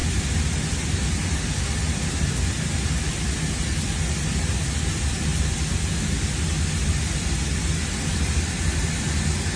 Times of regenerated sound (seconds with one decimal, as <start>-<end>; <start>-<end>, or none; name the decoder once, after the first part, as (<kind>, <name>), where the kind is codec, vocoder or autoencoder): none